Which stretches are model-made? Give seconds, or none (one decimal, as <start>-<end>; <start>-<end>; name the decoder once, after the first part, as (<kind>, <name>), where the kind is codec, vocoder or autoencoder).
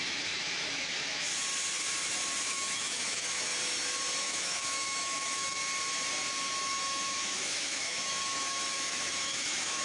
0.0-1.3 (autoencoder, DAC-VAE); 2.4-3.5; 4.2-5.6; 6.6-9.8